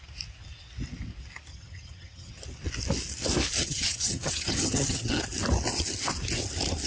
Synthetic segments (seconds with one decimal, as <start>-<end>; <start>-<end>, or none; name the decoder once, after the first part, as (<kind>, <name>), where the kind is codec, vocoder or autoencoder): 1.5-2.3 (vocoder, HiFi-GAN); 3.6-5.2